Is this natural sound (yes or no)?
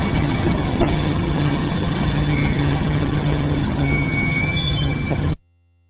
no